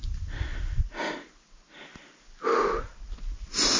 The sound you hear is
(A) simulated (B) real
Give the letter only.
B